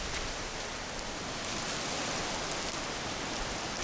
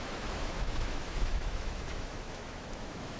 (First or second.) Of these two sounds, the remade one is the second